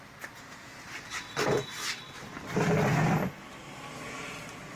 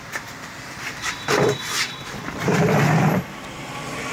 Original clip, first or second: first